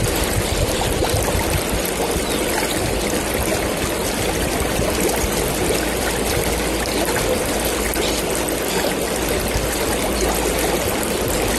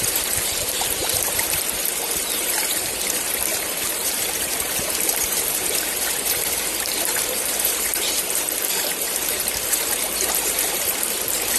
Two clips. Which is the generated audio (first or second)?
second